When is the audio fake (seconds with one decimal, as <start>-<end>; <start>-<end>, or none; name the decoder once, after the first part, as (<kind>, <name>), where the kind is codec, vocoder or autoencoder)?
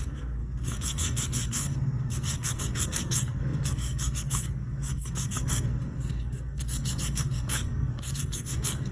0.0-8.9 (codec, SNAC)